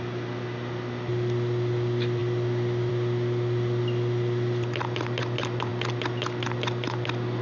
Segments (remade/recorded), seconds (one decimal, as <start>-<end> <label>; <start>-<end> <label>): 0.0-7.4 recorded